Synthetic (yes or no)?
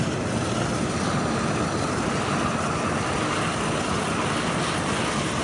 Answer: no